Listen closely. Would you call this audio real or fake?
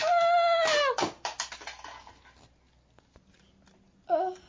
real